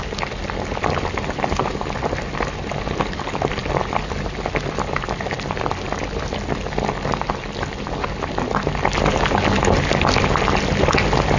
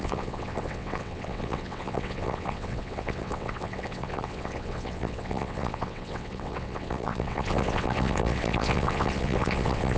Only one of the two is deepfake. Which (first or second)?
second